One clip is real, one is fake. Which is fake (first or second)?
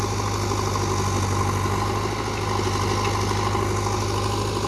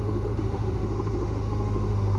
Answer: second